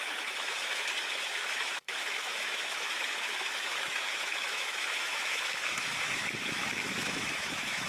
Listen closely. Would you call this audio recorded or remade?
remade